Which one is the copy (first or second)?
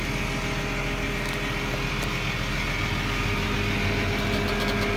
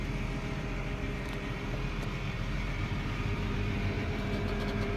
second